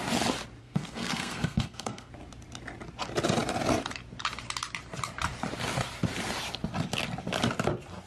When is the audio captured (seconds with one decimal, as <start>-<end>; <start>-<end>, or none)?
0.0-0.6; 2.1-8.1

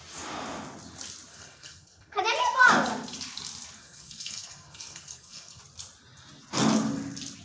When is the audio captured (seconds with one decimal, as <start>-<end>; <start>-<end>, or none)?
0.0-1.3; 2.2-3.8; 5.6-7.4